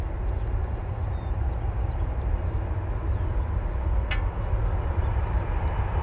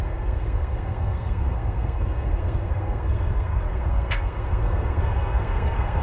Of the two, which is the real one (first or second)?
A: first